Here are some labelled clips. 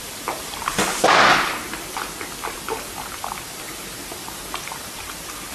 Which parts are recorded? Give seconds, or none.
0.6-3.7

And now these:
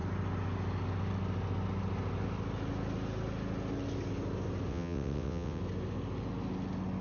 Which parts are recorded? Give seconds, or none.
0.0-4.7; 5.6-7.0

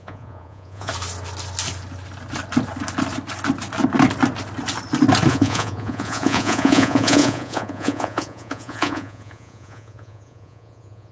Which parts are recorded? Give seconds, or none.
0.9-5.3

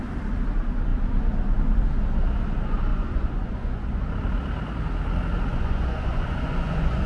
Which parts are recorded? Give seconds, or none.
0.0-2.9; 4.0-5.5